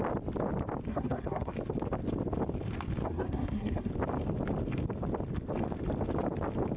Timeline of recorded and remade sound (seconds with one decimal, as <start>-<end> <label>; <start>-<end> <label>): 0.0-0.9 recorded; 0.9-1.5 remade; 1.5-3.0 recorded; 3.0-3.9 remade; 3.9-6.8 recorded